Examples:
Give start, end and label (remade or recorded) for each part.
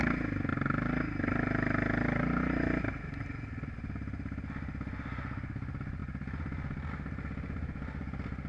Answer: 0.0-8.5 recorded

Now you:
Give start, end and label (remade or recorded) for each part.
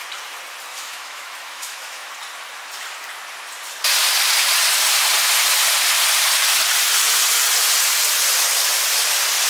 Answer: 0.0-0.7 recorded; 0.7-2.1 remade; 2.1-9.5 recorded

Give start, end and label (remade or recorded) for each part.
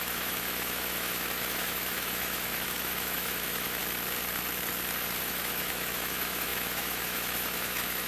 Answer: 0.0-3.8 remade; 3.8-5.2 recorded; 5.2-8.1 remade